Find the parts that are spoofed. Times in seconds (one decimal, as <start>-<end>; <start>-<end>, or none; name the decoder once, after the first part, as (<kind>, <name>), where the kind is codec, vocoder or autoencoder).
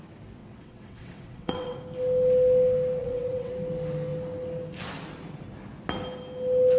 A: 0.4-1.8 (vocoder, WaveNeXt); 3.0-3.5